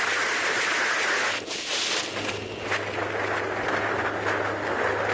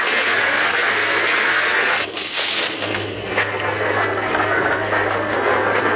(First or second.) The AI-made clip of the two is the second